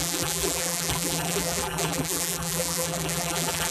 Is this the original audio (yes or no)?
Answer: no